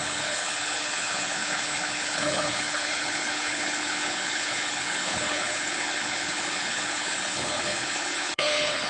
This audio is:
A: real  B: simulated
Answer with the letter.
B